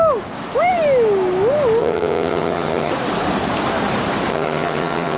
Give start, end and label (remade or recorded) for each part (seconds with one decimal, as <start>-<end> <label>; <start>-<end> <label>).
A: 0.0-1.8 recorded; 1.8-2.9 remade; 2.9-4.3 recorded; 4.3-5.2 remade